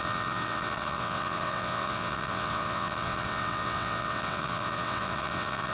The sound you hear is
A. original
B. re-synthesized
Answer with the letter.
B